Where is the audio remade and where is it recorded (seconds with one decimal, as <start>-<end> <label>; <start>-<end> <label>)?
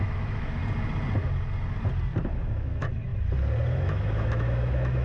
0.0-0.6 remade; 0.6-2.5 recorded; 2.5-3.1 remade; 3.1-3.7 recorded; 3.7-5.0 remade